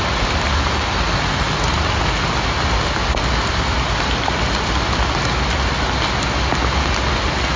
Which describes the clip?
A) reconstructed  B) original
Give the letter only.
B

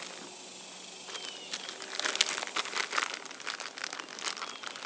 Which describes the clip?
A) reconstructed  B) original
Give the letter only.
B